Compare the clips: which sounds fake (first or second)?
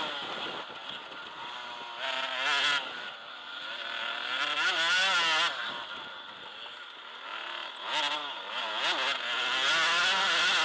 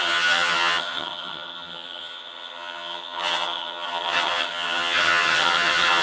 second